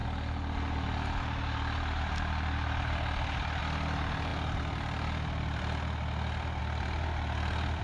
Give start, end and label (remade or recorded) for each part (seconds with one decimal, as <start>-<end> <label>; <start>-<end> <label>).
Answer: 0.0-7.8 recorded